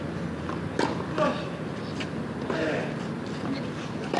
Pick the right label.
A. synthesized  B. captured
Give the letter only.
B